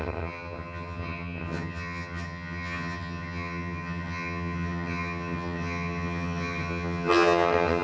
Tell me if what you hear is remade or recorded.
remade